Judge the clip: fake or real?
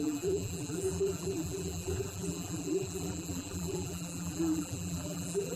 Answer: fake